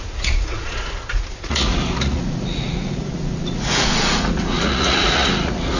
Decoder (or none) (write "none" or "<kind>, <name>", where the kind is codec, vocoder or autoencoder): vocoder, Vocos